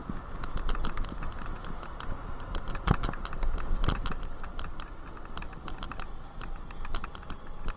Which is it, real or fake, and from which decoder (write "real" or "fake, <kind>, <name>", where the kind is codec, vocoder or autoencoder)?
real